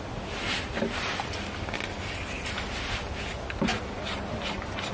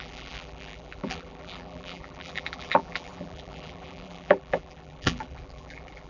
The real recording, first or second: first